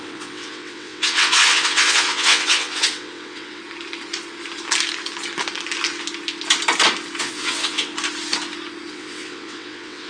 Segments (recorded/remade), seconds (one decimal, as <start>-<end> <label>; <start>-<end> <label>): 0.0-3.6 remade; 3.6-7.2 recorded; 7.2-7.9 remade; 7.9-8.9 recorded; 8.9-10.1 remade